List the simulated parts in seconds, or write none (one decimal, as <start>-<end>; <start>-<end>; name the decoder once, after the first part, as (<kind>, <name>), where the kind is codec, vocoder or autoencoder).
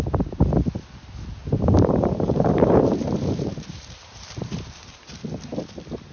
1.4-5.1 (vocoder, BigVGAN v2)